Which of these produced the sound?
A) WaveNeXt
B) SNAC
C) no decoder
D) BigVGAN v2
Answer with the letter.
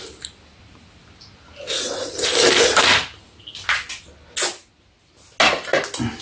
C